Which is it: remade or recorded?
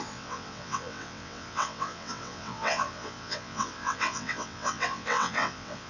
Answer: remade